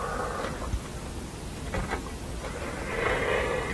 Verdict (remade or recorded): recorded